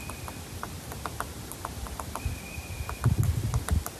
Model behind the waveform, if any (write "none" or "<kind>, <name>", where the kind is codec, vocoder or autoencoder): none